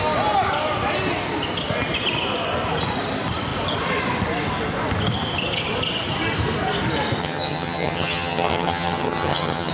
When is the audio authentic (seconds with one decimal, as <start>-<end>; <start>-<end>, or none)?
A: 0.0-7.2